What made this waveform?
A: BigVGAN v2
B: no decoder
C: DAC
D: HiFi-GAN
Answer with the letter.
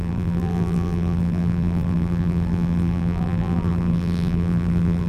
A